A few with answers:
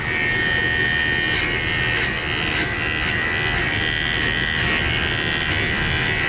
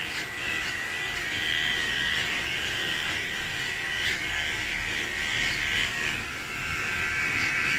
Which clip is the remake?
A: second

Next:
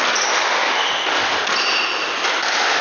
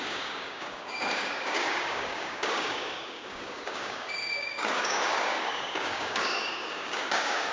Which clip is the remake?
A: second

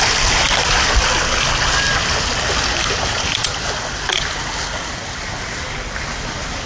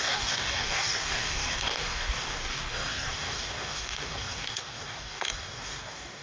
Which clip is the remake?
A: second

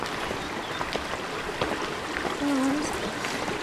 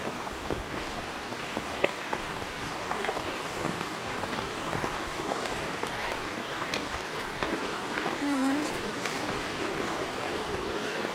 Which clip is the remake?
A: second